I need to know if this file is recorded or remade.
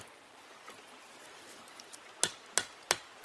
recorded